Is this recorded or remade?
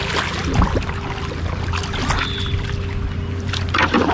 recorded